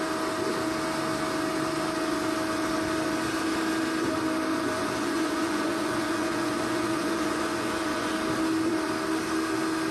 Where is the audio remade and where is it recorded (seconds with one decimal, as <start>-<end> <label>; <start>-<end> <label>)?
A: 0.0-4.5 recorded; 4.5-8.1 remade; 8.1-9.9 recorded